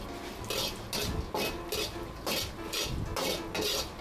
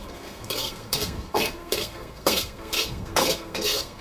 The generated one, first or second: second